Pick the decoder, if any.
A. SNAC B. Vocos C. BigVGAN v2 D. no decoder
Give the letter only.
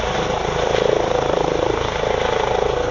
C